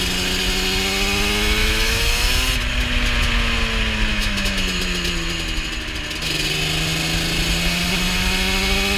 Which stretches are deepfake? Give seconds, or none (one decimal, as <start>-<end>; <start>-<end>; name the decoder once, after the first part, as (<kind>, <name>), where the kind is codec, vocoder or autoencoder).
1.6-2.3 (autoencoder, DAC-VAE); 4.1-4.8